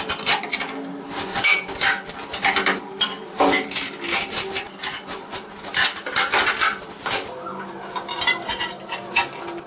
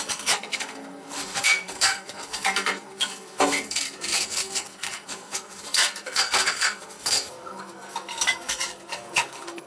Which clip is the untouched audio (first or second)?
first